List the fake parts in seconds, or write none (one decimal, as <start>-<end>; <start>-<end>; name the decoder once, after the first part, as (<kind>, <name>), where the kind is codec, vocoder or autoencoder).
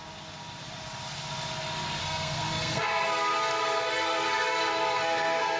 2.0-5.6 (codec, SNAC)